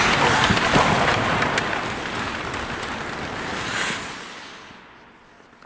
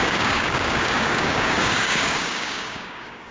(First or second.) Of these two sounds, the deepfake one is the second